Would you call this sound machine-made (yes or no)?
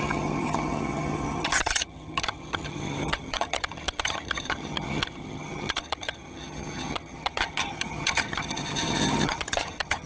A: yes